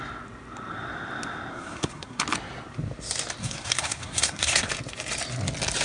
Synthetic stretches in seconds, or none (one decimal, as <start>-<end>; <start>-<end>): 1.5-2.2; 3.4-4.7